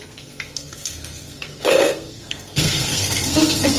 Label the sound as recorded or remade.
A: remade